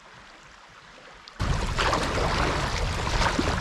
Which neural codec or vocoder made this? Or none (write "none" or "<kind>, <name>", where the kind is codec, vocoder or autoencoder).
none